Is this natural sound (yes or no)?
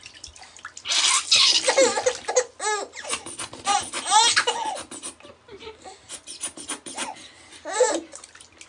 yes